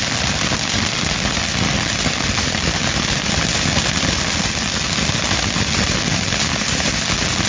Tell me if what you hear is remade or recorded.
recorded